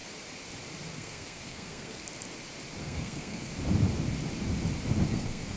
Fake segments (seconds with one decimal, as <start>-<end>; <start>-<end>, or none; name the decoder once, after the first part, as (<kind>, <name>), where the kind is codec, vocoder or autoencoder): 0.9-2.0 (codec, SNAC); 2.8-3.5; 5.1-5.6